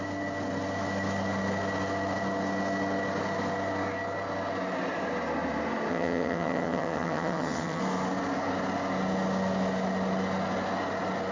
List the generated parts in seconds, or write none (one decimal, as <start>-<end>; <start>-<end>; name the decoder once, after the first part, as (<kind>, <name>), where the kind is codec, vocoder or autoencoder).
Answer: 5.9-7.8 (vocoder, HiFi-GAN)